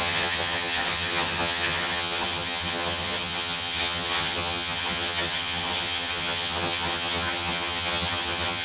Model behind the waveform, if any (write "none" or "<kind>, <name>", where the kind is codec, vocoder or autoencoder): vocoder, HiFi-GAN